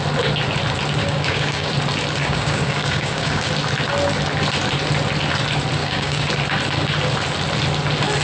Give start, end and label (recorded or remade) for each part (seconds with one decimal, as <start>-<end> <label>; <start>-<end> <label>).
0.0-1.0 recorded; 1.0-1.7 remade; 1.7-2.2 recorded; 2.2-3.5 remade; 3.5-5.8 recorded; 5.8-6.3 remade; 6.3-8.2 recorded